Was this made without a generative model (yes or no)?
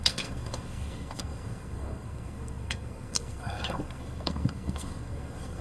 no